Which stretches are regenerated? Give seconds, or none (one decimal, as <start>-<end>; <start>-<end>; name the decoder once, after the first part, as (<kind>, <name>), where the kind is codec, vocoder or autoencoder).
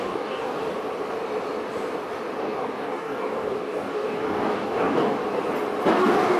0.0-0.7 (codec, DAC); 2.4-5.2; 5.9-6.4